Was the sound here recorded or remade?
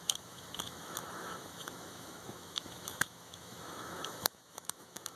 remade